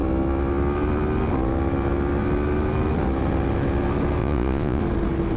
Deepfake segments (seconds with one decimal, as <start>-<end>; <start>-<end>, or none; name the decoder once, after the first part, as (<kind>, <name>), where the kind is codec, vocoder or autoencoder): 4.2-4.8 (vocoder, Vocos)